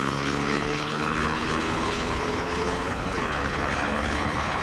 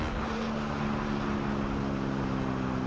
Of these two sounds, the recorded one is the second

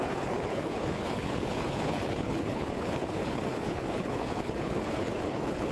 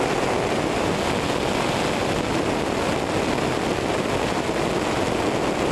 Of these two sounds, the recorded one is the second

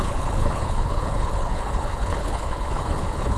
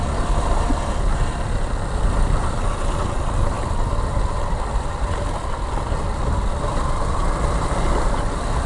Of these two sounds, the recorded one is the second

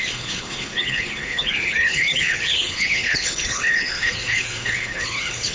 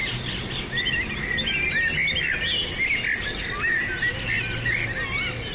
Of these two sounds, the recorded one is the second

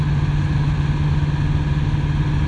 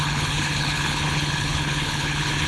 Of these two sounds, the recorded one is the first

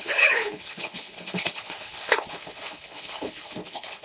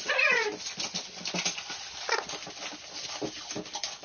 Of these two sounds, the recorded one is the second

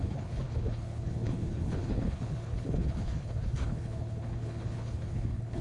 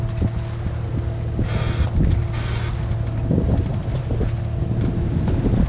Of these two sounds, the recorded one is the second